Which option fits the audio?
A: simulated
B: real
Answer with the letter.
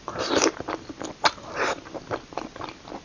B